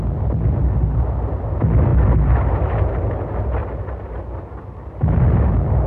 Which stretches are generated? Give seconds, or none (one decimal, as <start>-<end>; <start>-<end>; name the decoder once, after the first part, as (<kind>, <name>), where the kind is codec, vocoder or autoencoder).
none